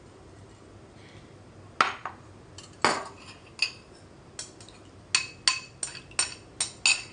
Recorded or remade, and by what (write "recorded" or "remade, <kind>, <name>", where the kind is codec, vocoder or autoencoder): recorded